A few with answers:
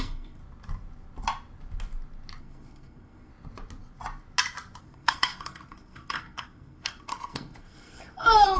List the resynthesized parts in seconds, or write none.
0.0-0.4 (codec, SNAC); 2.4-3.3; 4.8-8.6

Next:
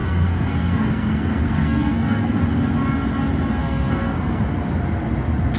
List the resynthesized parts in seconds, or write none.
0.0-2.4 (codec, SNAC); 3.6-4.4